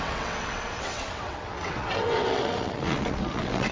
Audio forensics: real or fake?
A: fake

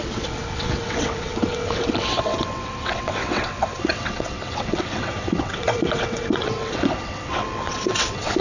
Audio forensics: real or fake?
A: fake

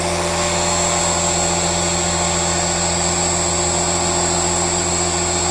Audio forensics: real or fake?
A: real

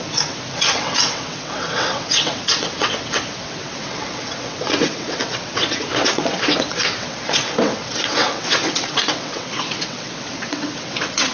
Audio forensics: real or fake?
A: fake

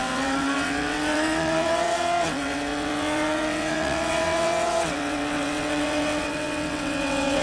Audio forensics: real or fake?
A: fake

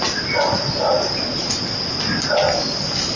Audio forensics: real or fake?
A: real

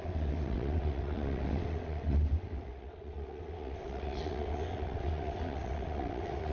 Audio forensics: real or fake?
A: fake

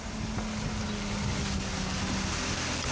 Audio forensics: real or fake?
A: real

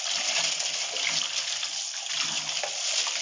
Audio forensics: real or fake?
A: real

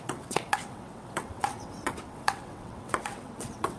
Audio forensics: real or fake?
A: fake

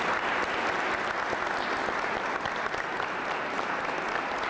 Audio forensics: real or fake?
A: real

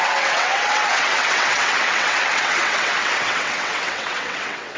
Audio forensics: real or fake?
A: fake